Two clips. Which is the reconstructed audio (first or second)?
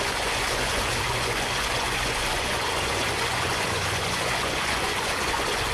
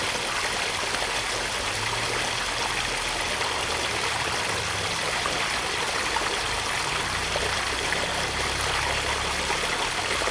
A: first